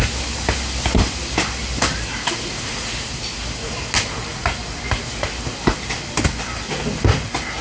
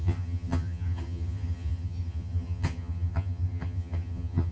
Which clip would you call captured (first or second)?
first